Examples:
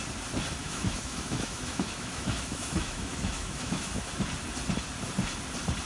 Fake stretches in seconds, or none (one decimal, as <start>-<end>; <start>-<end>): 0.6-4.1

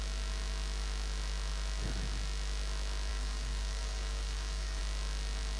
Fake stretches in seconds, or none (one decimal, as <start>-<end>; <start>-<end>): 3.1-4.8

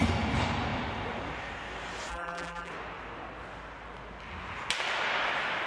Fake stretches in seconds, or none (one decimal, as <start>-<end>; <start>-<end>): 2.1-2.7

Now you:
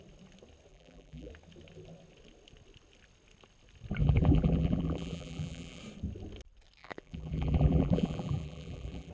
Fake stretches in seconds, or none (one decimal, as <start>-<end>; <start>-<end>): 0.7-1.3; 4.0-5.8; 6.8-9.1